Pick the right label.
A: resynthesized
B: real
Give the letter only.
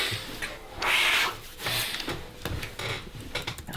B